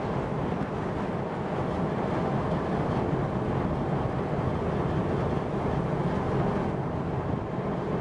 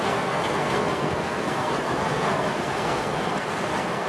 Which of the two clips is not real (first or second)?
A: second